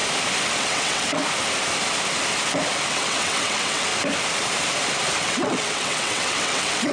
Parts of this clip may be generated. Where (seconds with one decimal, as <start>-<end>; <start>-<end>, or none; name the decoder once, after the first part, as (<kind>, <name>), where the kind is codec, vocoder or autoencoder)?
0.6-1.2 (vocoder, WaveNeXt); 2.9-3.9; 5.2-6.9